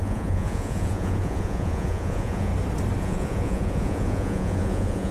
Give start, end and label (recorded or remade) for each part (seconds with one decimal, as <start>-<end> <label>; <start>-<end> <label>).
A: 0.0-2.5 remade; 2.5-3.0 recorded; 3.0-5.1 remade